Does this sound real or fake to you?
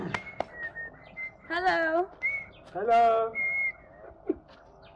real